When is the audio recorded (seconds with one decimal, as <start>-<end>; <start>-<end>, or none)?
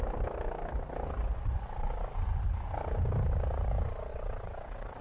0.0-4.1